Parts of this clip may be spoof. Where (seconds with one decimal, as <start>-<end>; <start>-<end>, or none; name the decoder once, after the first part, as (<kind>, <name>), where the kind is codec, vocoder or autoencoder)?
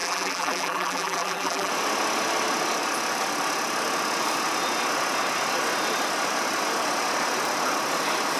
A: 0.0-1.7 (vocoder, BigVGAN v2)